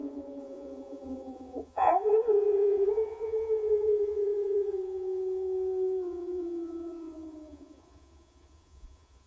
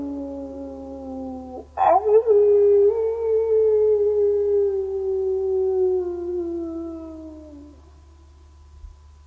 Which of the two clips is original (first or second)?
second